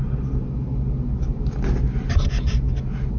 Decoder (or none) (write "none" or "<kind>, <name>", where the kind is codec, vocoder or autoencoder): none